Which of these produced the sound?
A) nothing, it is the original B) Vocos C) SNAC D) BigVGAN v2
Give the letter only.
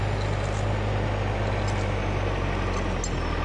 A